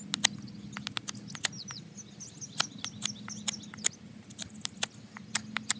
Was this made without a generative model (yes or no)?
yes